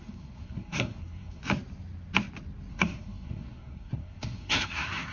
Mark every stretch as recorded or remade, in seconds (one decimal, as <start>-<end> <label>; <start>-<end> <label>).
0.0-1.4 remade; 1.4-2.7 recorded; 2.7-5.1 remade